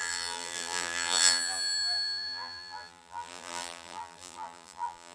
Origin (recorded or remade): remade